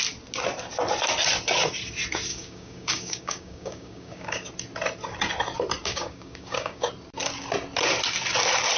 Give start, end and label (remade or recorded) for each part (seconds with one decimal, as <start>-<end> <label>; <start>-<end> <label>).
0.0-2.3 recorded; 2.3-4.5 remade; 4.5-5.8 recorded; 5.8-6.9 remade; 6.9-8.8 recorded